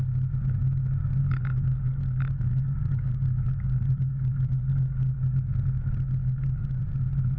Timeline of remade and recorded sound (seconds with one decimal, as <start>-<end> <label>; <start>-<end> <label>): 0.0-1.2 recorded; 1.2-5.0 remade; 5.0-6.2 recorded; 6.2-6.8 remade; 6.8-7.4 recorded